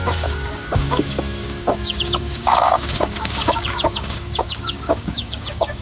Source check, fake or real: fake